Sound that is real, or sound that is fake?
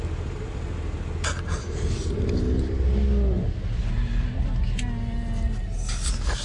real